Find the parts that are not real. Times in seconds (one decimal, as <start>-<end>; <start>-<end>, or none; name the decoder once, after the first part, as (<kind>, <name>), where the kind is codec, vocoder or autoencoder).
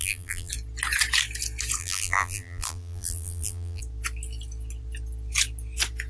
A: 0.0-0.5 (vocoder, BigVGAN v2); 1.8-3.8